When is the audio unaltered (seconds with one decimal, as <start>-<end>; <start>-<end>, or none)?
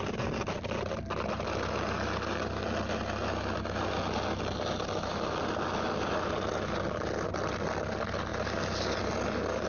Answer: 0.0-9.7